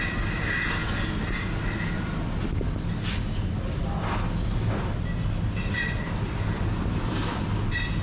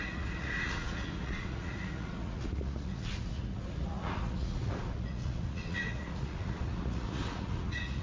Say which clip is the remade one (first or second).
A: second